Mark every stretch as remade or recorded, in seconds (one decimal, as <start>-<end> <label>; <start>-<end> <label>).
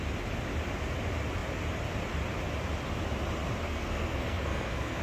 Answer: 0.0-3.6 recorded; 3.6-5.0 remade